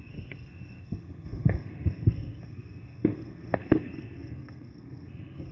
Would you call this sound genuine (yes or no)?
no